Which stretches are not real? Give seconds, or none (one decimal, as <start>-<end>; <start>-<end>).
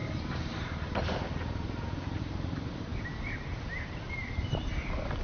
0.0-5.2